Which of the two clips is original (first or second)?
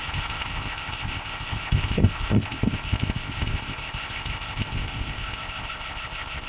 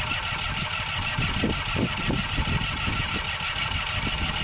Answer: second